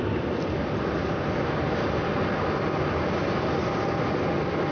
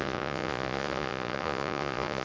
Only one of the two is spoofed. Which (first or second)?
second